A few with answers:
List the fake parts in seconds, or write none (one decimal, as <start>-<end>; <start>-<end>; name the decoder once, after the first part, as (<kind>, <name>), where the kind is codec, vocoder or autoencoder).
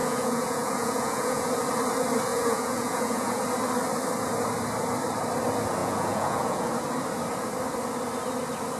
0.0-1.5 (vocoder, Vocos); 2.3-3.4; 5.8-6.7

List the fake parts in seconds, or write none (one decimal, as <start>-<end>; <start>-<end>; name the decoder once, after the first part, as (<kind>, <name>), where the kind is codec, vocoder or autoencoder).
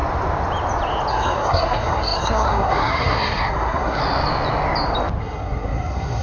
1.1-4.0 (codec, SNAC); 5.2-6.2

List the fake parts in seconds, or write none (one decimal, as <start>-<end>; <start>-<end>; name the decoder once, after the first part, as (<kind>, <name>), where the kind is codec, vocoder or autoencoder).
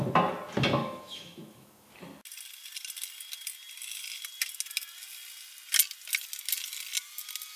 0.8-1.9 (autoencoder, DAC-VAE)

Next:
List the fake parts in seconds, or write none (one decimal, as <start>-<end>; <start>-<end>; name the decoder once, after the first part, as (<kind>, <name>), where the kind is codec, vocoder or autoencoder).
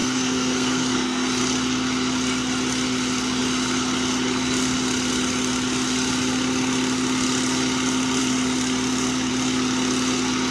0.0-1.4 (codec, SNAC)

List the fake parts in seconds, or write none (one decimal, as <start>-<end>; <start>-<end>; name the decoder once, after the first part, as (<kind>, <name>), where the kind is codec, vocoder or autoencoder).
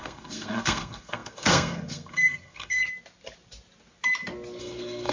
0.0-2.8 (codec, SNAC); 4.6-5.1